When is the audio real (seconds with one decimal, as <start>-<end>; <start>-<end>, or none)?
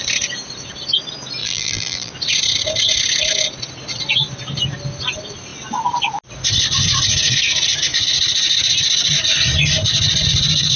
0.0-1.4; 2.1-10.8